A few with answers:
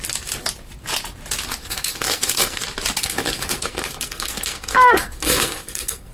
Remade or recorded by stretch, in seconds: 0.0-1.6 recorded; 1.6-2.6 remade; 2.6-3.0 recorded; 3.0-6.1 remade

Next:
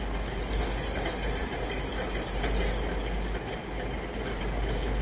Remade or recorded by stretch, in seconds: 0.0-5.0 recorded

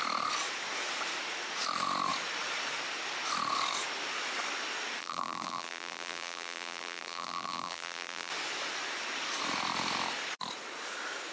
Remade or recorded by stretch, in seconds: 0.0-5.0 recorded; 5.0-8.3 remade; 8.3-11.3 recorded

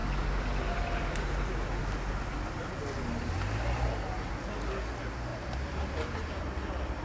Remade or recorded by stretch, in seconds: 0.0-5.3 recorded; 5.3-6.4 remade; 6.4-7.0 recorded

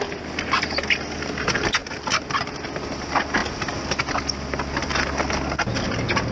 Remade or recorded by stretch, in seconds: 0.0-6.3 recorded

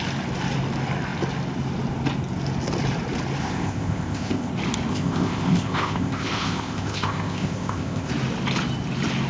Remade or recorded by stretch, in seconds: 0.0-3.4 recorded; 3.4-4.5 remade; 4.5-4.9 recorded; 4.9-8.1 remade; 8.1-9.3 recorded

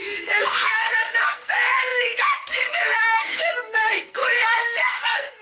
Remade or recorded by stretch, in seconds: 0.0-5.4 remade